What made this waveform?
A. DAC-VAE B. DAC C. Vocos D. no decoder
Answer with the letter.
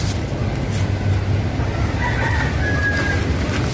D